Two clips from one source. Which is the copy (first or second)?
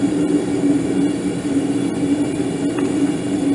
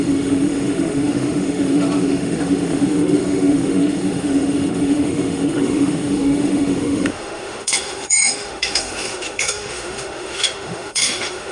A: second